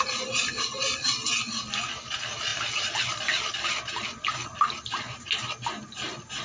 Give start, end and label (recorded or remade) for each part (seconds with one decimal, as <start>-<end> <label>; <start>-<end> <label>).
0.0-6.4 recorded